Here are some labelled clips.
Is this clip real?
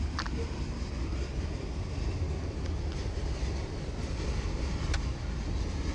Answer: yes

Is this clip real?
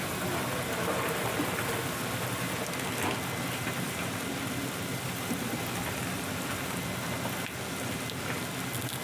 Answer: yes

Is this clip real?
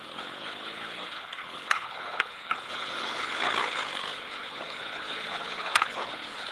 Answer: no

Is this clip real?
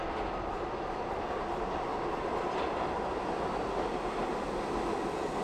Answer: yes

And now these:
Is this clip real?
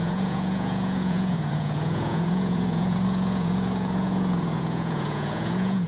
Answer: no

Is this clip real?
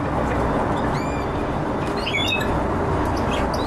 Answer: yes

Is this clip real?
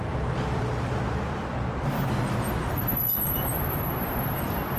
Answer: no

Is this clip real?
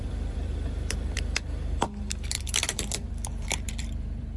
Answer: no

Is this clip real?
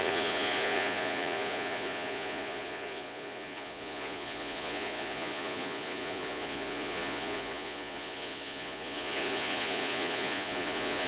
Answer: no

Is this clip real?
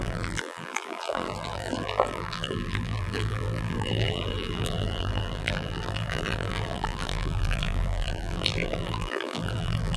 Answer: no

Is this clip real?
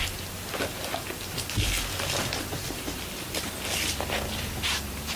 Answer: yes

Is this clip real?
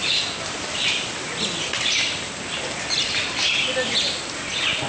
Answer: yes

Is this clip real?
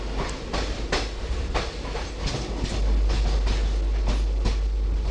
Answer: yes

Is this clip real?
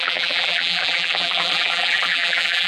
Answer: no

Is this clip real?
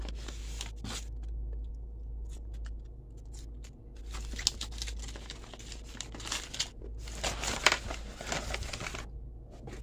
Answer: yes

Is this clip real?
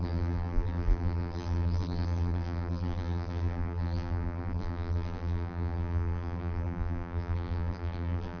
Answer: no